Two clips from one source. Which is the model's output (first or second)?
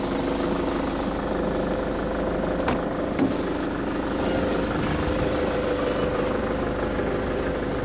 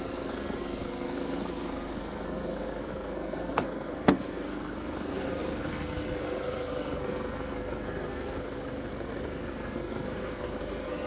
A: second